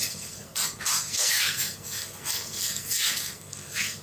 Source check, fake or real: fake